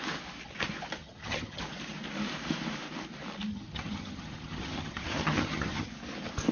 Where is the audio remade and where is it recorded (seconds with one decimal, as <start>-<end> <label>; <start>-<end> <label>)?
0.0-1.0 recorded; 1.0-1.6 remade; 1.6-3.5 recorded; 3.5-5.9 remade; 5.9-6.5 recorded